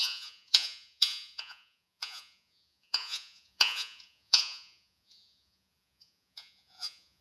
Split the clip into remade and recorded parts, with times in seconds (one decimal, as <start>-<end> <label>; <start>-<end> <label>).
0.0-7.2 remade